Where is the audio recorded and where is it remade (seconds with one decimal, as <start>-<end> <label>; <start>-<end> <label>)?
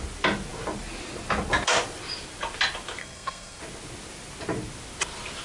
0.0-3.0 recorded; 3.0-3.6 remade; 3.6-5.4 recorded